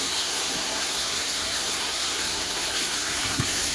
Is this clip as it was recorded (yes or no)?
no